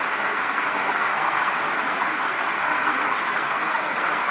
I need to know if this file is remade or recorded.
remade